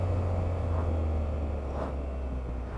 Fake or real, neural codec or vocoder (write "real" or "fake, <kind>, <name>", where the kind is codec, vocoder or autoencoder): real